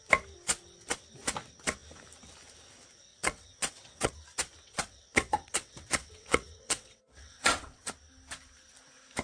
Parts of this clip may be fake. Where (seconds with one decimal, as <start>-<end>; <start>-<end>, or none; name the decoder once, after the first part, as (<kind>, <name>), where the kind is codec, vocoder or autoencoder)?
3.1-4.1 (vocoder, WaveNeXt); 4.6-7.9